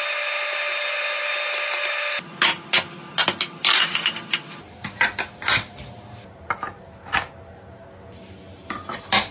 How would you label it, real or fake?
real